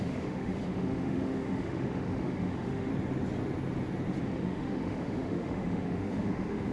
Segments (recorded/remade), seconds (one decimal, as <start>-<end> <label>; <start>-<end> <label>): 0.0-2.9 remade; 2.9-4.2 recorded; 4.2-6.7 remade